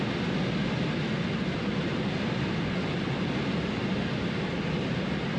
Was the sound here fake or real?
real